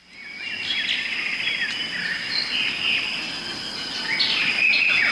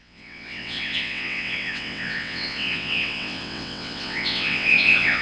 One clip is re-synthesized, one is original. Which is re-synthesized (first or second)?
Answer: second